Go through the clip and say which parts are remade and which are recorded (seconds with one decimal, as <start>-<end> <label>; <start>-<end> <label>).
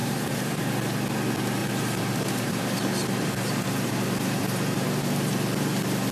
0.0-0.6 remade; 0.6-1.6 recorded; 1.6-5.3 remade; 5.3-6.1 recorded